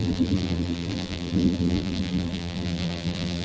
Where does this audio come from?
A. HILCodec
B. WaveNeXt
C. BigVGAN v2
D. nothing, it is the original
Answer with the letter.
C